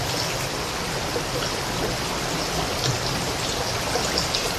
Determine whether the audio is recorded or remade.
recorded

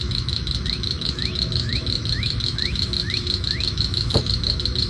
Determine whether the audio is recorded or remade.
remade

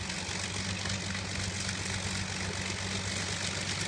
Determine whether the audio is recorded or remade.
recorded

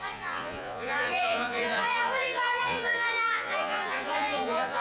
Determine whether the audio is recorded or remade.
remade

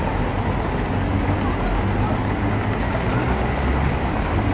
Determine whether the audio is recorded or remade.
recorded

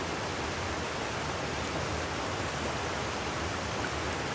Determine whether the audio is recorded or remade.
recorded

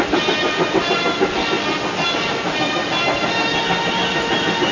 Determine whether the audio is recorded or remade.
recorded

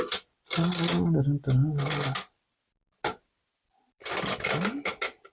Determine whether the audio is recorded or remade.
recorded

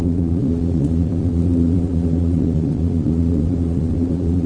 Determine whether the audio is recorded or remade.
remade